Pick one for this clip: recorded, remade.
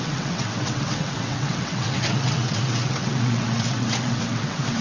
remade